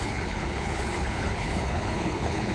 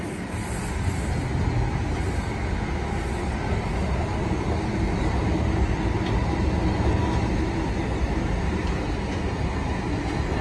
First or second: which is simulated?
first